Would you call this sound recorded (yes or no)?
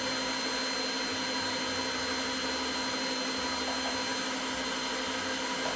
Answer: yes